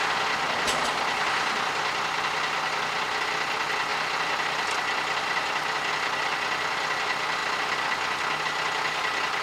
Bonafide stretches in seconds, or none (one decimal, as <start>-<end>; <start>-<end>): 0.0-9.4

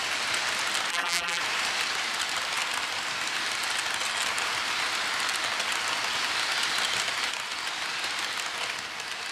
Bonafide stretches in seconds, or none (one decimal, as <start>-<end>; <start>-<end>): 0.0-0.9; 1.4-9.3

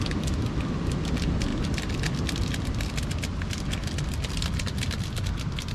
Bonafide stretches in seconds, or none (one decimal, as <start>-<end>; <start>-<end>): 0.0-5.7

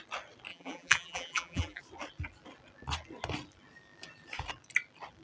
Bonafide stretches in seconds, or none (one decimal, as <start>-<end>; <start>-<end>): 0.0-0.5; 1.8-5.2

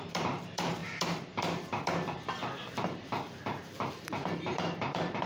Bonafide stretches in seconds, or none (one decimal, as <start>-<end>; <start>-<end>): none

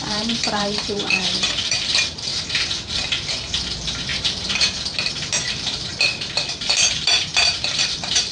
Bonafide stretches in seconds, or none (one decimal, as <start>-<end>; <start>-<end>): 2.3-3.6; 5.9-6.5

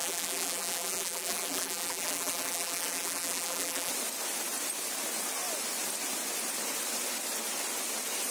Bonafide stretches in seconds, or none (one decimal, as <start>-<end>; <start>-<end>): 3.9-8.3

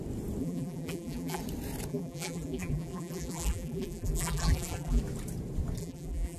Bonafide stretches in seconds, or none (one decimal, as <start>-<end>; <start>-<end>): 0.0-0.4; 1.4-1.9; 5.0-5.8